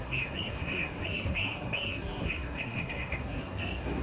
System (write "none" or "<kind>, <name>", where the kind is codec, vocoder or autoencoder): codec, SNAC